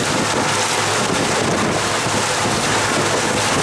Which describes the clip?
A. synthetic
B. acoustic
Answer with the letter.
B